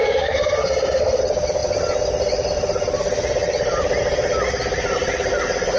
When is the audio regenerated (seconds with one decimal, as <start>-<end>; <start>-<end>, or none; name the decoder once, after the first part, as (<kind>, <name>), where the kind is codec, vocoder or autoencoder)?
0.0-1.2 (codec, SNAC)

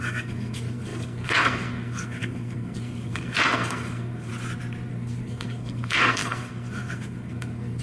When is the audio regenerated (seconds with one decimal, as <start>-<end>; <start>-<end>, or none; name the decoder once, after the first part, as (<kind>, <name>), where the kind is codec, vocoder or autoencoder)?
0.0-4.3 (codec, SNAC); 4.9-7.8

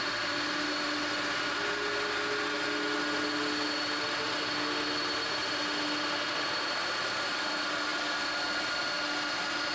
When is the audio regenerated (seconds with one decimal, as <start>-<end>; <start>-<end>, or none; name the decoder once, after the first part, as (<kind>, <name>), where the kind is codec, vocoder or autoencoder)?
none